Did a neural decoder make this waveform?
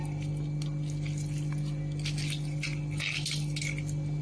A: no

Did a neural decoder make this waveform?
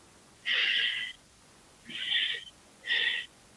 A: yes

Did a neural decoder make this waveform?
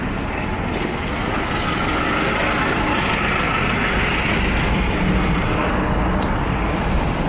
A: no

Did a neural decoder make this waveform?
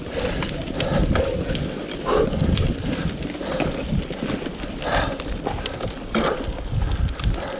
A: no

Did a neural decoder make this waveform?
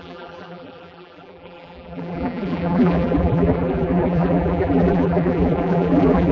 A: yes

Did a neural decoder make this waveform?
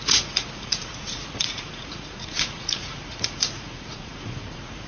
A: yes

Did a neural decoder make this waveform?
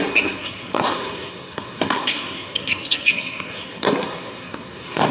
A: yes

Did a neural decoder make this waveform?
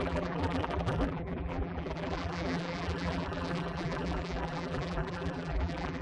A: yes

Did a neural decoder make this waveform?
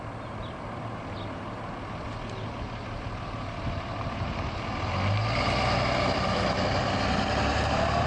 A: no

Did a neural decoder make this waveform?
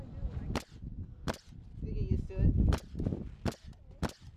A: no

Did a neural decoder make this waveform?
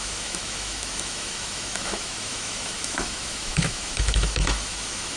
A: yes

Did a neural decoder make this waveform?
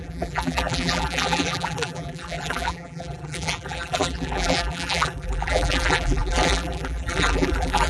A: yes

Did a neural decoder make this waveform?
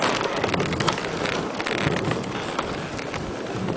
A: no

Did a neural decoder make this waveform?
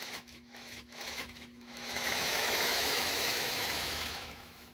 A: yes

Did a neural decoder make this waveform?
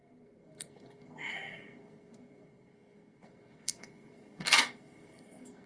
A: yes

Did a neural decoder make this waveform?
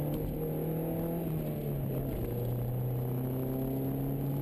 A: no